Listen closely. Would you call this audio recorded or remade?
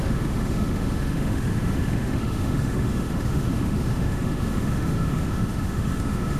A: remade